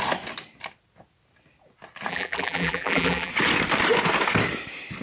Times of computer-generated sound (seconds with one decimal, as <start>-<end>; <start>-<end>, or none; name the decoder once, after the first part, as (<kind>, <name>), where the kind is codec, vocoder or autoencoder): 2.1-3.3 (vocoder, BigVGAN v2)